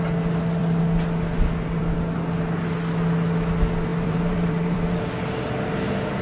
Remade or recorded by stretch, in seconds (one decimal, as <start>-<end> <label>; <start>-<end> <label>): 0.0-3.9 recorded; 3.9-5.0 remade; 5.0-6.2 recorded